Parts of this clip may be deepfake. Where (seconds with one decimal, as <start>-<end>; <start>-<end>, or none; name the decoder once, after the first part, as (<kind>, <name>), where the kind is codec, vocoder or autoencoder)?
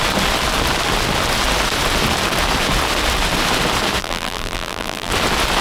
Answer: 4.0-5.1 (vocoder, BigVGAN v2)